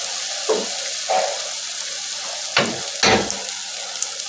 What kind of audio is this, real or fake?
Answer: real